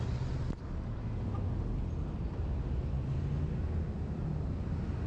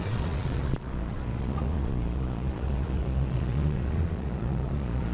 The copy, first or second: second